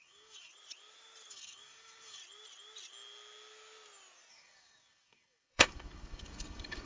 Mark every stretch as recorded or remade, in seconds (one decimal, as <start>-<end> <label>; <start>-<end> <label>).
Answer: 0.0-0.5 remade; 0.5-1.3 recorded; 1.3-2.2 remade; 2.2-4.3 recorded; 4.3-6.9 remade